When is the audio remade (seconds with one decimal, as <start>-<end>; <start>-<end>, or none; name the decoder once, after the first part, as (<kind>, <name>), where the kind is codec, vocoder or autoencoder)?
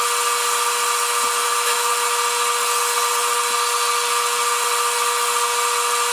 1.4-1.9 (autoencoder, DAC-VAE)